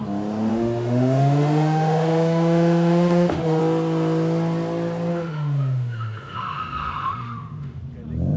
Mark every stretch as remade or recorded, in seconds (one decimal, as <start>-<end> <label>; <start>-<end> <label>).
0.0-0.5 recorded; 0.5-3.6 remade; 3.6-5.1 recorded; 5.1-7.8 remade; 7.8-8.4 recorded